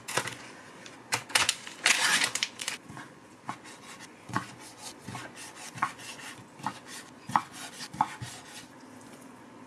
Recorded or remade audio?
remade